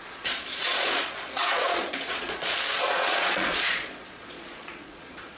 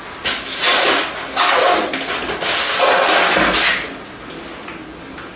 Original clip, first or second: second